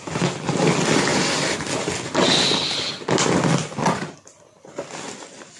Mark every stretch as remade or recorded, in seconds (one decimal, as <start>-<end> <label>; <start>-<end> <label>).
0.0-5.6 recorded